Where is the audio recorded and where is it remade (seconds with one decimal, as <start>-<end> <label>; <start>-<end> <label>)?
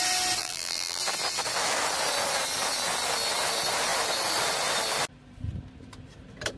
0.0-0.4 recorded; 0.4-1.0 remade; 1.0-6.6 recorded